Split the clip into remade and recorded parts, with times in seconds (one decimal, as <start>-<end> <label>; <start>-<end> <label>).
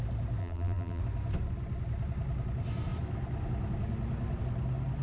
0.0-0.4 recorded; 0.4-1.0 remade; 1.0-5.0 recorded